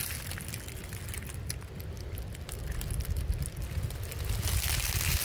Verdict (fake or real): real